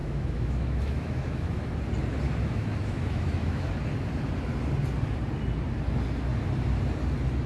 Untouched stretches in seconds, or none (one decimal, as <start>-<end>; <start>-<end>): 1.7-2.4; 3.7-7.5